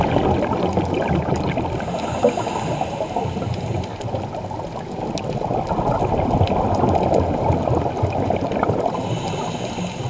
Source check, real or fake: real